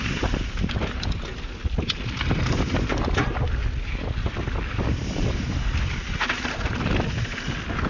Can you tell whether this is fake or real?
real